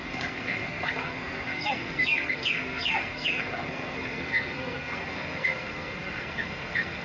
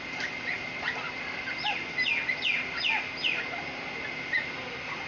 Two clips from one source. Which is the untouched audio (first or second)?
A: second